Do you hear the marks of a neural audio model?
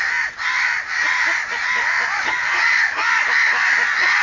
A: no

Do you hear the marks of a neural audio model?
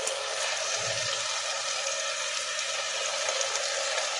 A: no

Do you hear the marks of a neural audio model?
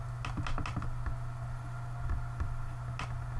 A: no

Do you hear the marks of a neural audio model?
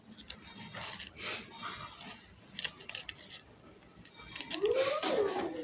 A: no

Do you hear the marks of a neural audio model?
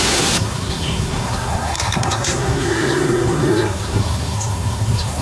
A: yes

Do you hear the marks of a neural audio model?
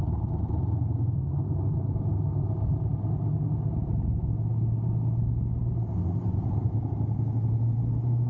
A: no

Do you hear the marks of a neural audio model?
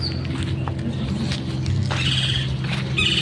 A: no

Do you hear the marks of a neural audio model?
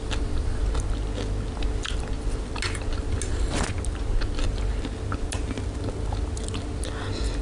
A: no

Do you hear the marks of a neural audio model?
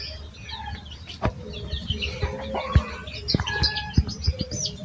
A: no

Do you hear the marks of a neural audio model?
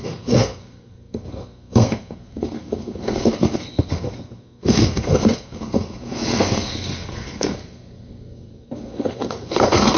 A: yes